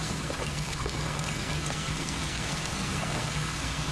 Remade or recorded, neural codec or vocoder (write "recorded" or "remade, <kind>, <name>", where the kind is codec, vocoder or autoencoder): remade, codec, SNAC